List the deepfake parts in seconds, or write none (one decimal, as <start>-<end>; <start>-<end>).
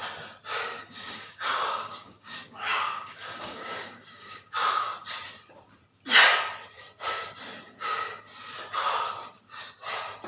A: 0.8-4.9